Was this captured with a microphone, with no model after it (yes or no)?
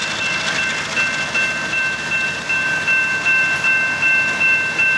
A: yes